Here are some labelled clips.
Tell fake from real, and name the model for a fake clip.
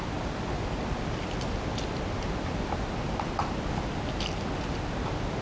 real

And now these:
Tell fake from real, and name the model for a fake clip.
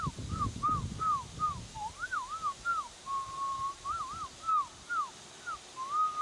real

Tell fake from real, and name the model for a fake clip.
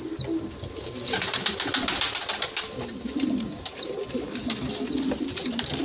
real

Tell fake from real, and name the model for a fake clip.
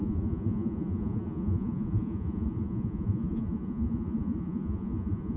fake, vocoder, Vocos